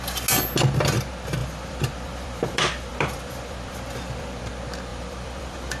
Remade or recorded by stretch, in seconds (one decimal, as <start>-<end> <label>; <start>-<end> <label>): 0.0-1.4 recorded; 1.4-4.4 remade; 4.4-4.9 recorded; 4.9-5.8 remade